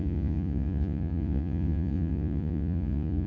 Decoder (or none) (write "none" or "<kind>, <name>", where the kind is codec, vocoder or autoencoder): vocoder, Vocos